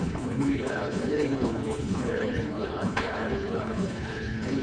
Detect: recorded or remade remade